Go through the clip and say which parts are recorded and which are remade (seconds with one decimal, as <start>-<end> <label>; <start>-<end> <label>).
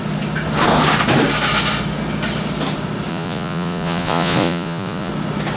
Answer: 0.0-3.1 recorded; 3.1-5.1 remade; 5.1-5.6 recorded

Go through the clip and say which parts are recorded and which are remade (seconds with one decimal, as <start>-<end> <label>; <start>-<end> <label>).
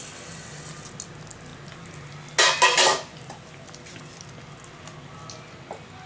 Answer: 0.0-6.1 recorded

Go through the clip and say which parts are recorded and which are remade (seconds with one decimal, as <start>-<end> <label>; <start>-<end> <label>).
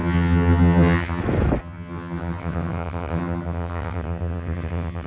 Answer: 0.0-1.2 remade; 1.2-1.6 recorded; 1.6-5.1 remade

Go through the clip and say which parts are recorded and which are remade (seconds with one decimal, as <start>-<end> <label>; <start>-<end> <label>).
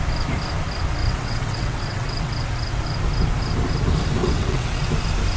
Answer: 0.0-1.0 recorded; 1.0-2.3 remade; 2.3-4.2 recorded; 4.2-4.9 remade; 4.9-5.4 recorded